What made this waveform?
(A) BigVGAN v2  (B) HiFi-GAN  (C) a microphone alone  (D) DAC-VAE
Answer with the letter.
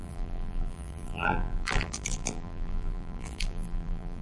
A